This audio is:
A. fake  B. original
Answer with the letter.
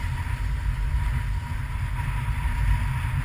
B